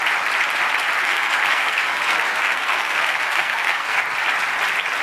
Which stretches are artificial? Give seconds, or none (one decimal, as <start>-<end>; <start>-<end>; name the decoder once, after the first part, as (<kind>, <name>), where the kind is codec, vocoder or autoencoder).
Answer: 1.0-4.0 (codec, SNAC)